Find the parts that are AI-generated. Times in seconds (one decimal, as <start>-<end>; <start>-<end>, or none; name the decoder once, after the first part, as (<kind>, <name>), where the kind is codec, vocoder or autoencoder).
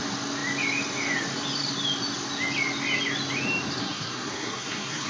3.8-5.1 (codec, SNAC)